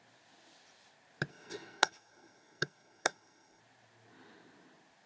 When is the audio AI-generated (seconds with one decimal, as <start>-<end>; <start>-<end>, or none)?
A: 1.3-3.6